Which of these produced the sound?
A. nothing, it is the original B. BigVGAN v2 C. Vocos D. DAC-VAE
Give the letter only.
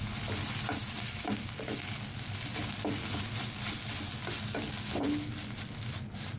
A